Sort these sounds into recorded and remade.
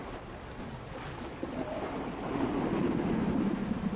recorded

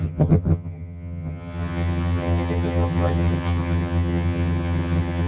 remade